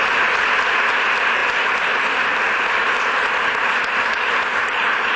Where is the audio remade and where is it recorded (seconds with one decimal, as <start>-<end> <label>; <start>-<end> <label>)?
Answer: 0.0-5.2 recorded